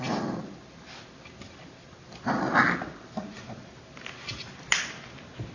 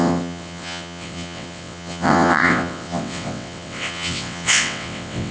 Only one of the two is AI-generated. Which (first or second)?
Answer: second